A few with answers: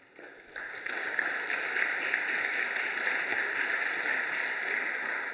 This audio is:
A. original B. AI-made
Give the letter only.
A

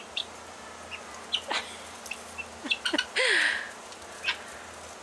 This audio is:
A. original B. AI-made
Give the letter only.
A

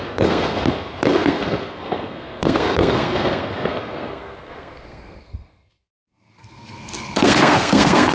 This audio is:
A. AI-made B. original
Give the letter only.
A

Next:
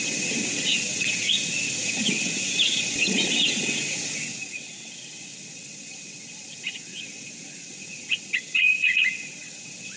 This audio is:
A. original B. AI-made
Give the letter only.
B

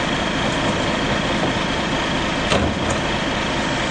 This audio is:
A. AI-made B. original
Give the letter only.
A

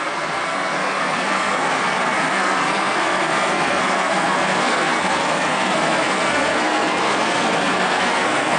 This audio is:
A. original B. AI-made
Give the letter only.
B